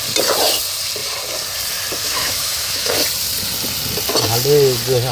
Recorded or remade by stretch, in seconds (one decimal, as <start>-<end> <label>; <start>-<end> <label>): 0.0-2.0 recorded; 2.0-2.9 remade; 2.9-5.1 recorded